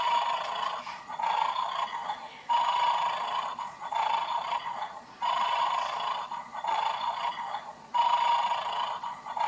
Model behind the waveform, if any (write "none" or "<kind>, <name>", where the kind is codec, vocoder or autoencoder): vocoder, Vocos